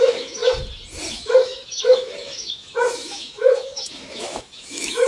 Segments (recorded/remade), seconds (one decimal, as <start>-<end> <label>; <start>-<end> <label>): 0.0-0.4 remade; 0.4-1.1 recorded; 1.1-5.1 remade